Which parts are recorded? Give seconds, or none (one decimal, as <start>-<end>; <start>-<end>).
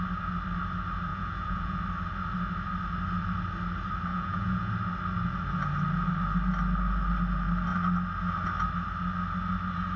0.0-1.1; 1.8-4.1; 4.7-10.0